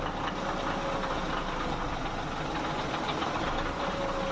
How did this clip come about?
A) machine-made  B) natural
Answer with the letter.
B